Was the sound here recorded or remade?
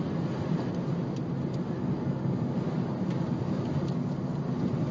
recorded